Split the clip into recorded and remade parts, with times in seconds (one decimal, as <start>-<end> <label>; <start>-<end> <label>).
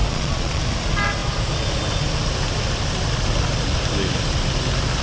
0.0-0.6 remade; 0.6-5.0 recorded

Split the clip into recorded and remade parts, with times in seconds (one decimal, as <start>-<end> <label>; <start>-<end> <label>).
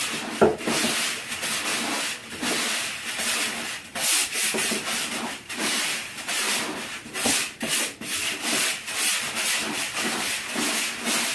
0.0-0.5 recorded; 0.5-1.2 remade; 1.2-4.6 recorded; 4.6-8.1 remade; 8.1-9.6 recorded; 9.6-10.7 remade; 10.7-11.3 recorded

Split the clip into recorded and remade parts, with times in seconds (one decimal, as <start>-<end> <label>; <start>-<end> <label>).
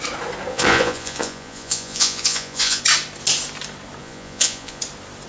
0.0-0.5 recorded; 0.5-2.8 remade; 2.8-4.0 recorded; 4.0-4.8 remade; 4.8-5.3 recorded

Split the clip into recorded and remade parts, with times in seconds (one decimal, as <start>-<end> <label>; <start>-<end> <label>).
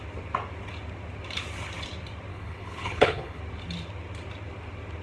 0.0-2.3 recorded; 2.3-3.4 remade; 3.4-5.0 recorded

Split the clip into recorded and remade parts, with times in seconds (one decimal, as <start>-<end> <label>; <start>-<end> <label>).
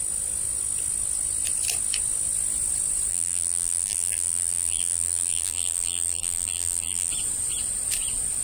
0.0-3.1 recorded; 3.1-7.1 remade; 7.1-8.4 recorded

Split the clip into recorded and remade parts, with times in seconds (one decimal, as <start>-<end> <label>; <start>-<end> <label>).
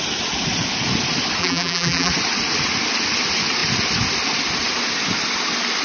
0.0-1.4 recorded; 1.4-2.1 remade; 2.1-5.8 recorded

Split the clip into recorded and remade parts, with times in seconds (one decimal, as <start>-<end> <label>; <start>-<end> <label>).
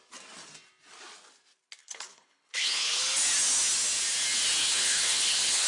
0.0-1.8 recorded; 1.8-3.0 remade; 3.0-4.6 recorded; 4.6-5.7 remade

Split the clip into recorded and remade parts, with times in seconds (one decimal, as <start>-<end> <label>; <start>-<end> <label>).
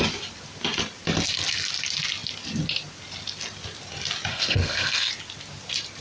0.0-4.3 recorded; 4.3-5.1 remade; 5.1-6.0 recorded